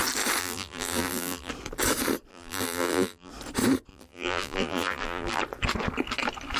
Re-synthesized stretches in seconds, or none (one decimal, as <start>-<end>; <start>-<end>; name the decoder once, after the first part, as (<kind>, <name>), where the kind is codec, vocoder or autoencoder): 0.4-1.5 (vocoder, BigVGAN v2); 2.3-3.3; 3.9-5.4